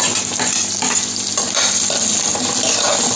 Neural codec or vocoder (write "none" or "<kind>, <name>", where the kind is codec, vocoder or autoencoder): none